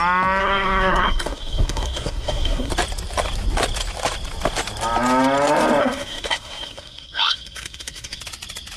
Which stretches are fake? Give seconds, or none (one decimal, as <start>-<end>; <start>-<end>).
0.4-2.7; 5.8-8.2